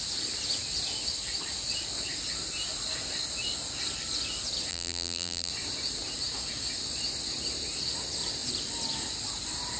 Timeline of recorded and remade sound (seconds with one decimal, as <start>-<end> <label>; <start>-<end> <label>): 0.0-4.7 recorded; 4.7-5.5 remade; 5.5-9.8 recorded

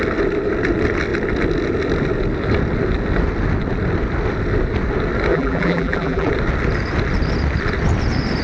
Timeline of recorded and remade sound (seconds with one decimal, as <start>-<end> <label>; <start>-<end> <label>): 0.0-5.3 recorded; 5.3-6.3 remade; 6.3-8.4 recorded

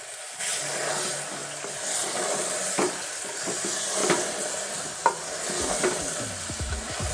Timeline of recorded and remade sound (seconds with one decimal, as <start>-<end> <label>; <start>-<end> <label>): 0.0-1.4 recorded; 1.4-2.7 remade; 2.7-4.0 recorded; 4.0-4.9 remade; 4.9-7.1 recorded

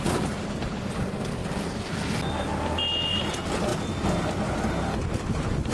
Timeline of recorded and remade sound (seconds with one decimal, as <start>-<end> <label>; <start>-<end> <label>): 0.0-5.7 recorded

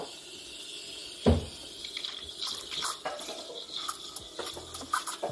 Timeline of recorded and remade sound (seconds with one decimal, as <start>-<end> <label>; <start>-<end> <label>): 0.0-1.0 recorded; 1.0-4.2 remade; 4.2-5.3 recorded